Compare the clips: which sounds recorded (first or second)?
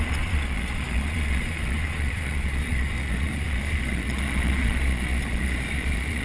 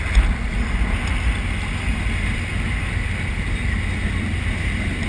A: second